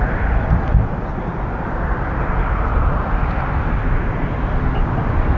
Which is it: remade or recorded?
recorded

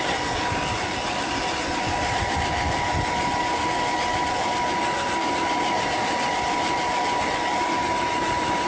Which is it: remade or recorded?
recorded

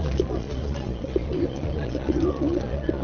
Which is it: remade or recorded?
remade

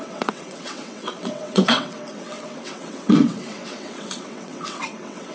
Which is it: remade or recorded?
remade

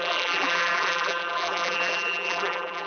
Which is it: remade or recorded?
remade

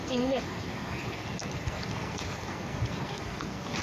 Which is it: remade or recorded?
remade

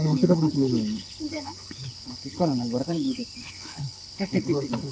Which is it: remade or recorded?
remade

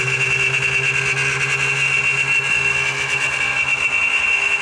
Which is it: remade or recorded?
recorded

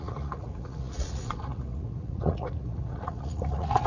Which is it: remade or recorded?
remade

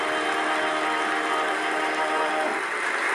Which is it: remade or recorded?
recorded